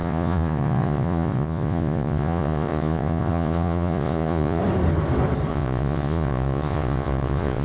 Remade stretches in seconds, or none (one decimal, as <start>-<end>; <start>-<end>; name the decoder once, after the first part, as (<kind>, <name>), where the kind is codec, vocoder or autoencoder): 0.0-4.6 (vocoder, Vocos); 5.5-7.6